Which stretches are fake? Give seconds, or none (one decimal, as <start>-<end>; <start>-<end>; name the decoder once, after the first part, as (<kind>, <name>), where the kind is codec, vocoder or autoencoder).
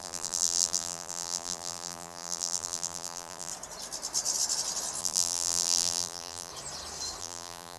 0.0-3.5 (vocoder, BigVGAN v2); 5.0-6.5; 7.2-7.8